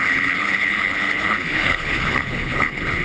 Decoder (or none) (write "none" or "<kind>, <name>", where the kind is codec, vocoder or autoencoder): codec, HILCodec